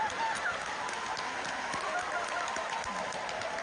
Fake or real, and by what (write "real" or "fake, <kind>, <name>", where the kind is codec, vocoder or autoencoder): real